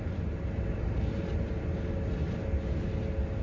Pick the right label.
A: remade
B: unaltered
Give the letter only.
B